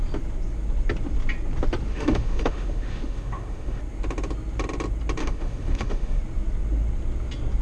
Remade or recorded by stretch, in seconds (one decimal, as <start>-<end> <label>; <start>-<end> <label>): 0.0-1.9 recorded; 1.9-3.8 remade; 3.8-5.2 recorded; 5.2-6.2 remade; 6.2-7.6 recorded